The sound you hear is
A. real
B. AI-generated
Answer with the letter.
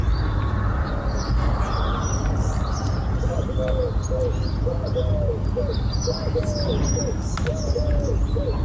A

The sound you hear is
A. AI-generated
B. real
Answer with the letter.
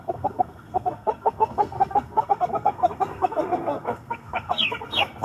A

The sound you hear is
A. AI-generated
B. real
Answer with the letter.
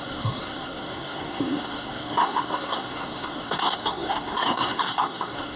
A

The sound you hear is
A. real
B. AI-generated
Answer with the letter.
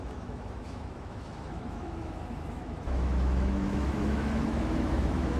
B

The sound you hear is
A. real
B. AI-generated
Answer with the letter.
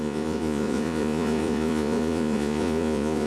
B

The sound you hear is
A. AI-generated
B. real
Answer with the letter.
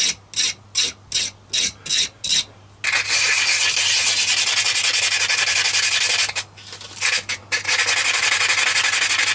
B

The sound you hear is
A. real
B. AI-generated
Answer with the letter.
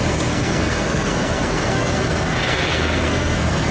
B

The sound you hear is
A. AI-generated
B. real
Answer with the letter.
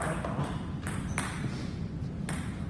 B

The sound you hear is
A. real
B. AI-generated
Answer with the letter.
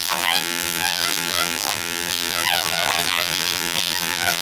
B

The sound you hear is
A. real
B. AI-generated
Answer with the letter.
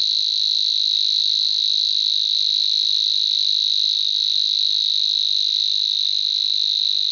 A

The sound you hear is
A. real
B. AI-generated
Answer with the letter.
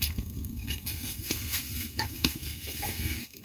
B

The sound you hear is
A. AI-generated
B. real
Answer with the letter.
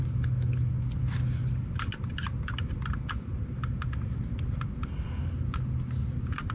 B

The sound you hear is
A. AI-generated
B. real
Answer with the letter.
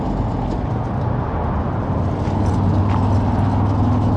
B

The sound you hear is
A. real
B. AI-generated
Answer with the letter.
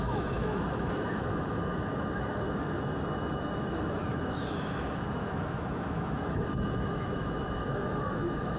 B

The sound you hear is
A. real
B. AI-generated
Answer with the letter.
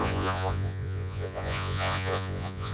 B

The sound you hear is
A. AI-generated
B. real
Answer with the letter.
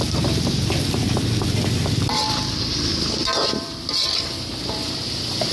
A